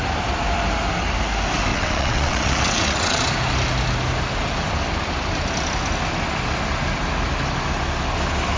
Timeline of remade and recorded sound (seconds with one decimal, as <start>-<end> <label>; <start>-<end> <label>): 0.0-1.7 recorded; 1.7-3.2 remade; 3.2-8.6 recorded